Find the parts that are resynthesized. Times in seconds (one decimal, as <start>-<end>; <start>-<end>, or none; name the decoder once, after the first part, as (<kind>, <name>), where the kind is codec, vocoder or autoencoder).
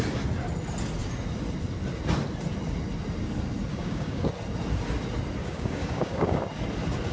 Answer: 3.7-4.3 (codec, DAC); 5.4-6.4